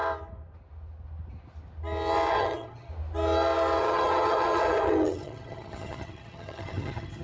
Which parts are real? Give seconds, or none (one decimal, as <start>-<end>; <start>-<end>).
0.0-2.3; 2.9-3.8